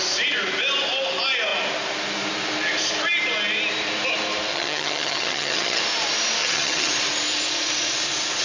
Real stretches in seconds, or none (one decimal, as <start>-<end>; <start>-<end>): 0.0-4.5; 5.8-6.4; 6.9-8.4